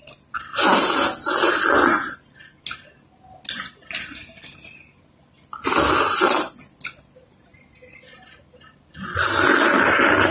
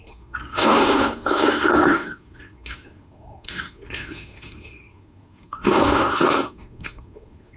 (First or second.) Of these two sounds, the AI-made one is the second